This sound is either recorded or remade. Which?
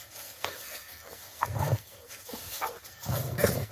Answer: remade